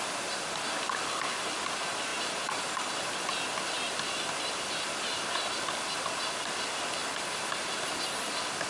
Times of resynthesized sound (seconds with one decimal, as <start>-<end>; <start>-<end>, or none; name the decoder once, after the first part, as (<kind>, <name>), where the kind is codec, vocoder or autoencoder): none